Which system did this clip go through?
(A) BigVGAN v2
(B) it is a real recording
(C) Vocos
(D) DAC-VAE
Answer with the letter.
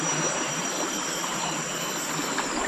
B